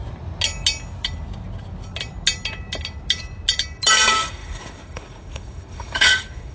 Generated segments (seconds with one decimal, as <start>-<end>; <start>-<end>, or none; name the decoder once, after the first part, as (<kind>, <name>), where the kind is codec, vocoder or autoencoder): 3.9-6.5 (codec, DAC)